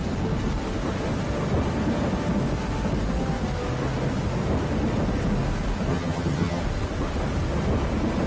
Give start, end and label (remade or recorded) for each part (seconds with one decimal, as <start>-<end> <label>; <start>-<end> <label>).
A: 0.0-5.9 recorded; 5.9-6.6 remade; 6.6-8.3 recorded